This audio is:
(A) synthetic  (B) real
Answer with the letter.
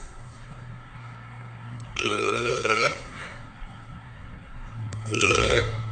A